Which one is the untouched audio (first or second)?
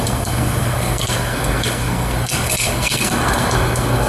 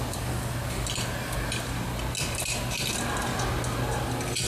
second